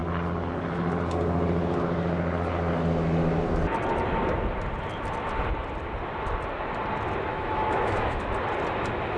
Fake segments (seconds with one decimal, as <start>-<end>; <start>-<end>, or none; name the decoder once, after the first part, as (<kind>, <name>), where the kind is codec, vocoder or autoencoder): 7.3-8.3 (autoencoder, DAC-VAE)